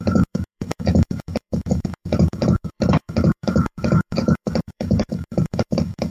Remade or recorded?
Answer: remade